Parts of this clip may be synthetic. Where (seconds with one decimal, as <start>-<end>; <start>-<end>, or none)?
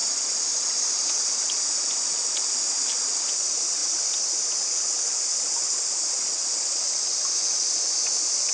0.0-0.9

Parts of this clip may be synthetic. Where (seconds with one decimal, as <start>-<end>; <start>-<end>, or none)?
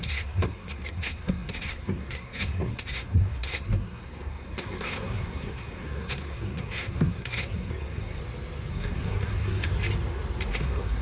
0.0-8.2; 8.7-9.7; 10.5-11.0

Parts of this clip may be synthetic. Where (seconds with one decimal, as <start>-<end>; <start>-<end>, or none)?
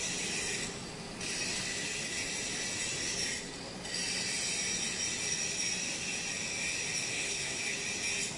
7.1-7.6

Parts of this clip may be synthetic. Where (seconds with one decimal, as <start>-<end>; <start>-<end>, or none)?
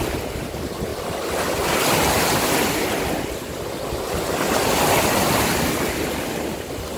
none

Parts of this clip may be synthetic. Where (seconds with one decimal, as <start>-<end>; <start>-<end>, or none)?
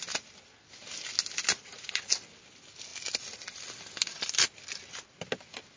none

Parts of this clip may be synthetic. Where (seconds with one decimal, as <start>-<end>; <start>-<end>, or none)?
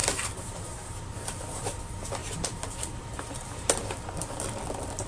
0.0-1.8; 2.2-4.6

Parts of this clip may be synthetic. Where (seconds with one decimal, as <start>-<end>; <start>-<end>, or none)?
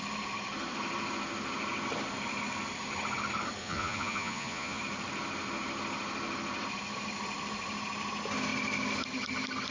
3.6-4.8